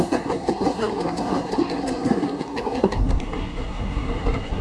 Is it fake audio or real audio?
fake